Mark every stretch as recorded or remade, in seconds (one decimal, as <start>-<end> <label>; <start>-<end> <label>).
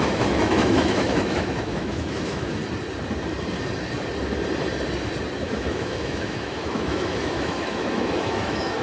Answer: 0.0-2.6 remade; 2.6-5.4 recorded; 5.4-8.8 remade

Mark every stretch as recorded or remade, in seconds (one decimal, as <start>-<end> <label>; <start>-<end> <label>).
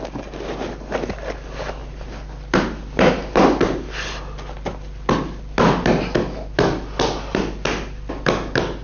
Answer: 0.0-8.8 recorded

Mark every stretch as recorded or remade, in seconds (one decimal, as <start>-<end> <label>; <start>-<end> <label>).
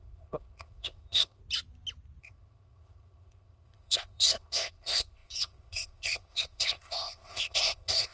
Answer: 0.0-1.4 remade; 1.4-2.2 recorded; 2.2-8.1 remade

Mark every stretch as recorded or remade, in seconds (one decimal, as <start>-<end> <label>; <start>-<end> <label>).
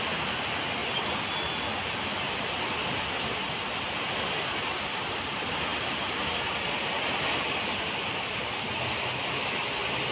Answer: 0.0-10.1 recorded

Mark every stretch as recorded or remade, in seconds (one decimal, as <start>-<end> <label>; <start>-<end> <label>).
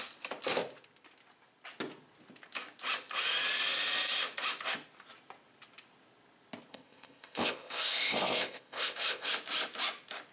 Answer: 0.0-6.7 recorded; 6.7-9.3 remade; 9.3-10.3 recorded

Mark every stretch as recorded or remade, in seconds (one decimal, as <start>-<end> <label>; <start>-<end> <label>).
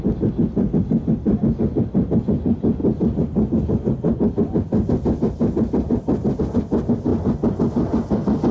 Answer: 0.0-8.5 recorded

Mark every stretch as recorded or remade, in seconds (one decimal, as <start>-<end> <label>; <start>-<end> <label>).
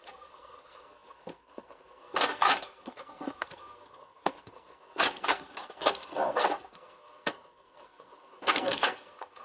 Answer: 0.0-9.4 remade